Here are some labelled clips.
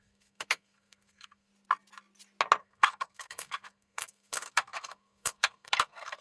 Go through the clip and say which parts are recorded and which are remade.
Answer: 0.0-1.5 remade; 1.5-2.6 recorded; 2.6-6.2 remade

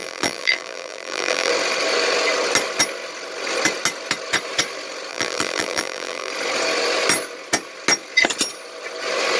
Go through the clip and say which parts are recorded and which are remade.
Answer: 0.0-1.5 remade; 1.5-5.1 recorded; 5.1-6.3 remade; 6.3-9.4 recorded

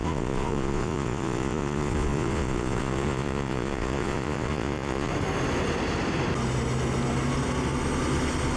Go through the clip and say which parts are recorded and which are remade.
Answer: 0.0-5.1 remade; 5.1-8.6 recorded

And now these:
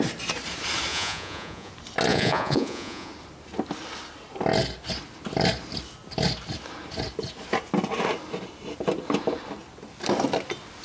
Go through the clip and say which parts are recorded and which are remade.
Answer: 0.0-0.9 recorded; 0.9-1.7 remade; 1.7-2.1 recorded; 2.1-3.1 remade; 3.1-10.8 recorded

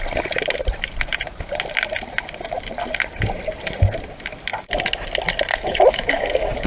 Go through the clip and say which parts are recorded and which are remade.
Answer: 0.0-5.5 recorded; 5.5-6.7 remade

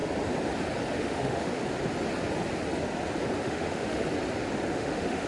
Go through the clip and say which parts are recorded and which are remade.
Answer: 0.0-0.9 recorded; 0.9-1.6 remade; 1.6-3.4 recorded; 3.4-4.0 remade; 4.0-4.7 recorded; 4.7-5.3 remade

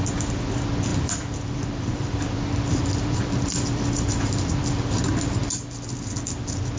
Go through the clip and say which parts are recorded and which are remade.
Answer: 0.0-0.9 recorded; 0.9-5.0 remade; 5.0-6.8 recorded